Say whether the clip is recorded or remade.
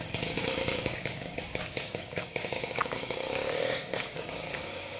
remade